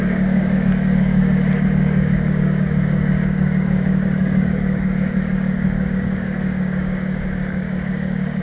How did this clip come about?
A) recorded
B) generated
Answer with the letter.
B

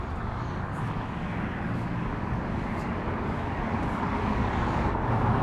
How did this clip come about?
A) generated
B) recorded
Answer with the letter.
A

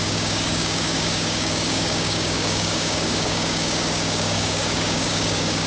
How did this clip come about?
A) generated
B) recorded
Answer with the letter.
A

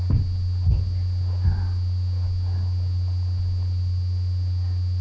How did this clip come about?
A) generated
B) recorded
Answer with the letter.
B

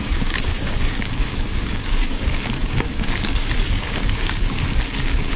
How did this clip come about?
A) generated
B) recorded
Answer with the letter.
A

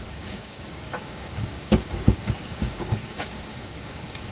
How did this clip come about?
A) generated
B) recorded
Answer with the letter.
A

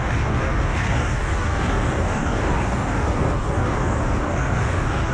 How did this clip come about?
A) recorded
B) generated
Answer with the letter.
B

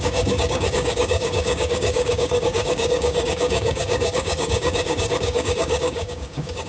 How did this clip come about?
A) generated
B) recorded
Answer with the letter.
A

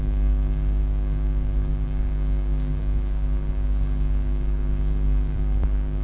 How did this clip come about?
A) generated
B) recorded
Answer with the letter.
A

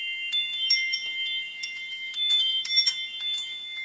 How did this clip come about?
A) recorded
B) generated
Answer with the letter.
B